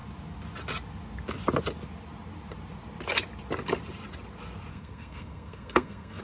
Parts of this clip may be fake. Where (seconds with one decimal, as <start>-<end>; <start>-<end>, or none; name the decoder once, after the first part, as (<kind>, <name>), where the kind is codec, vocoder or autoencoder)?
4.7-6.2 (codec, SNAC)